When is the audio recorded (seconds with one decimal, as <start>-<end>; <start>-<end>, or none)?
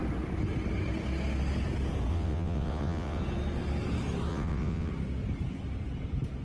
0.0-2.1; 3.2-4.3; 4.9-6.4